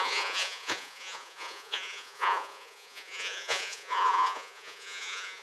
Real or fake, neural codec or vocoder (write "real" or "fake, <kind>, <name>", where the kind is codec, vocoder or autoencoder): fake, vocoder, Vocos